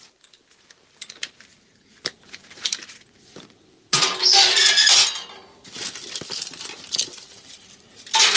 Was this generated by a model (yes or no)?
no